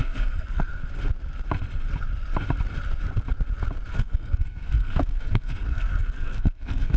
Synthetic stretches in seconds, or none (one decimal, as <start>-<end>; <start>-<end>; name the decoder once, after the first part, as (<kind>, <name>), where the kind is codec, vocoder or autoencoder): 0.0-0.7 (codec, SNAC); 3.9-7.0